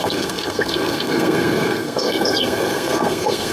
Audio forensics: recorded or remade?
remade